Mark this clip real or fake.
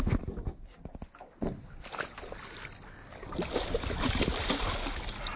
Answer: real